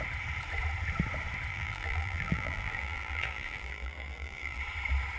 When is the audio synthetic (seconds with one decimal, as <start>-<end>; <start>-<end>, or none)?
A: 1.5-4.6